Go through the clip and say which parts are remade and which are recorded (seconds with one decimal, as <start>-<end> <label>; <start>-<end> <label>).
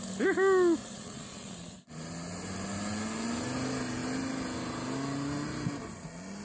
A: 0.0-0.8 recorded; 0.8-1.9 remade; 1.9-6.4 recorded